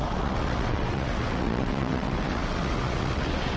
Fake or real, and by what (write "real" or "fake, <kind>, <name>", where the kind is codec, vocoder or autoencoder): fake, vocoder, WaveNeXt